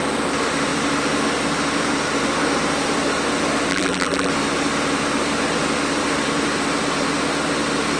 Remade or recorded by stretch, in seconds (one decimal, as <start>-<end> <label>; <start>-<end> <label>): 0.0-3.7 recorded; 3.7-4.3 remade; 4.3-8.0 recorded